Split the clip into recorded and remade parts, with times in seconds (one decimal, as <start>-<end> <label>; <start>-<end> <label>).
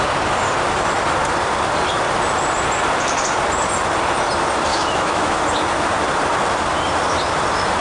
0.0-4.7 recorded; 4.7-5.4 remade; 5.4-7.8 recorded